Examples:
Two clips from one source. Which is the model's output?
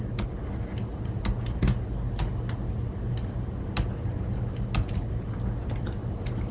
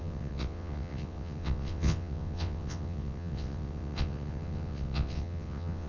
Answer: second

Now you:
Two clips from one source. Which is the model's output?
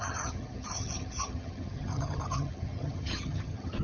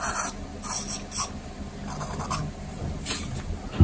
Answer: first